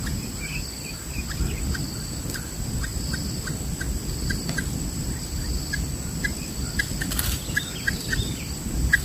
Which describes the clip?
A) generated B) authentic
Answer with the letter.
B